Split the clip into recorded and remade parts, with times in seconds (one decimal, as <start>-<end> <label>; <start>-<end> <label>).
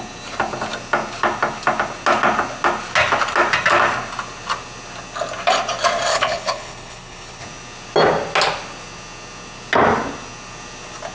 0.0-6.1 recorded; 6.1-7.4 remade; 7.4-11.1 recorded